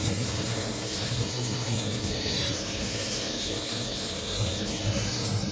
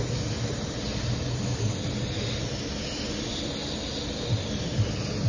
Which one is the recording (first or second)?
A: second